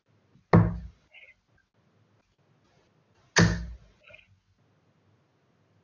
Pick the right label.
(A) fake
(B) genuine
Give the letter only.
B